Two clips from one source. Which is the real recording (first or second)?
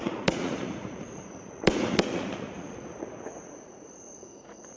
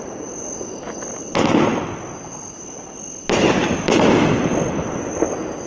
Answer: second